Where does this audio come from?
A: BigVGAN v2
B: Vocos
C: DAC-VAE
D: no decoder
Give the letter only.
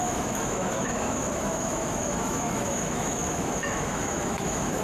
C